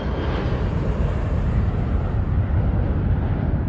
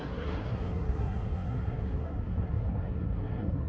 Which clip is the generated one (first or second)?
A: second